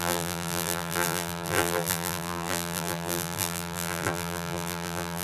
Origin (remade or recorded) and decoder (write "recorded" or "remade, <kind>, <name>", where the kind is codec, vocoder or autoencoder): remade, vocoder, BigVGAN v2